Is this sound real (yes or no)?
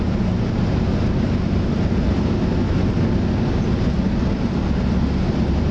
yes